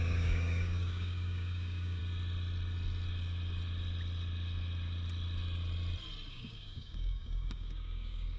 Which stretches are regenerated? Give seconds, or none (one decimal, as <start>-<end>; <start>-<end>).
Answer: 0.0-2.0; 6.3-8.4

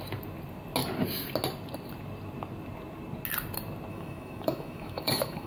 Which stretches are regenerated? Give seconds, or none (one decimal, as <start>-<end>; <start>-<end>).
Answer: 3.9-5.5

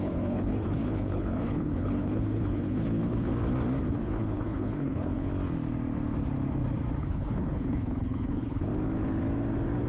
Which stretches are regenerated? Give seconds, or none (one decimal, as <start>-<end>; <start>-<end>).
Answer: 0.0-3.3; 3.9-5.3; 7.0-8.7

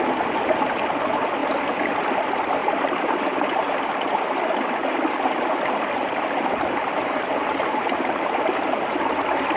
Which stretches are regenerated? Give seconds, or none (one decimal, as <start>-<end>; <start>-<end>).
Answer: 2.6-4.4; 6.0-7.6

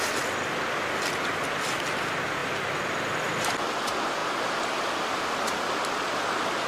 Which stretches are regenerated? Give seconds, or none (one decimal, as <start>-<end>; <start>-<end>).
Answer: 4.2-5.1

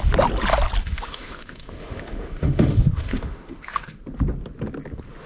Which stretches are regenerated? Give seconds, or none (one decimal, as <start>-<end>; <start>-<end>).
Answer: 0.8-4.0